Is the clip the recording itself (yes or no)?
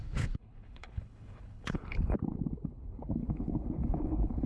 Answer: no